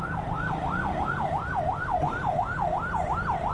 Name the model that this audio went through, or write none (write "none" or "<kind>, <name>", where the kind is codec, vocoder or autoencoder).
none